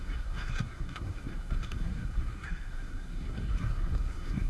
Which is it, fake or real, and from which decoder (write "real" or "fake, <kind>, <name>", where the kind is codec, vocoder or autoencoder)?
fake, codec, SNAC